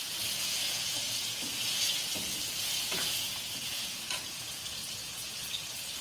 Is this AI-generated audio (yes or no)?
yes